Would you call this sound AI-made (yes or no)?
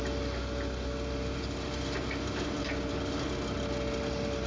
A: no